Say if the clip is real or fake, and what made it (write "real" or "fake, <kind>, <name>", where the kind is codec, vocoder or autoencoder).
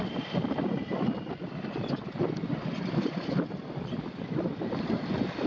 real